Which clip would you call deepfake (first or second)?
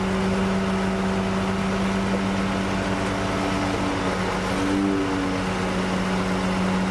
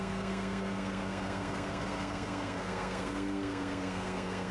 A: second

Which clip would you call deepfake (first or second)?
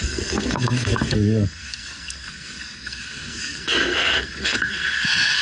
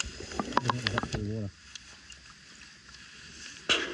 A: first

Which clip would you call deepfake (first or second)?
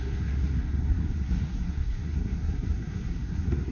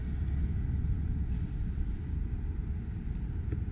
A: first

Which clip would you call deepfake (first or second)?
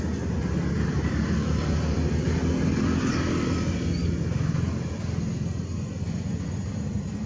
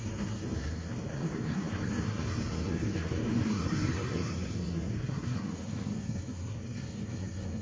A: second